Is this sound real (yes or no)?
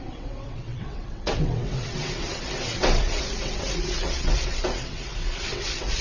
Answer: no